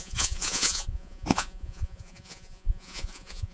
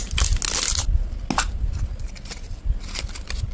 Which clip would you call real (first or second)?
second